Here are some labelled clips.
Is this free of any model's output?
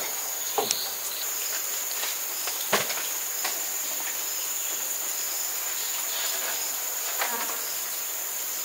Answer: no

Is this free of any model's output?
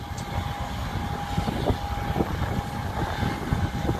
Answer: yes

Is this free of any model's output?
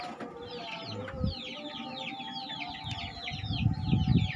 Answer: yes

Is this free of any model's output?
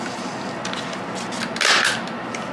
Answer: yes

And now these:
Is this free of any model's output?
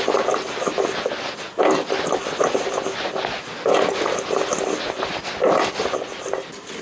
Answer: yes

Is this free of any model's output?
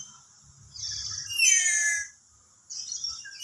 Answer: yes